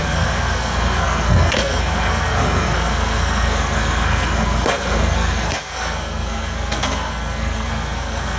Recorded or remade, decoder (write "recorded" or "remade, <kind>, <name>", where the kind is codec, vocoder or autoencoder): remade, codec, SNAC